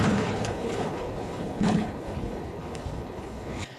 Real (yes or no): no